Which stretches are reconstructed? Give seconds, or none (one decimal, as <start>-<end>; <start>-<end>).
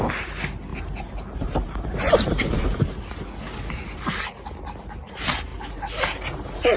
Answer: 0.7-3.0; 5.5-6.8